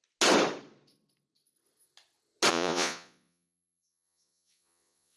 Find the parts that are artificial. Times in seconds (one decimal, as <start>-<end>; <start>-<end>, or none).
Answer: 2.5-5.2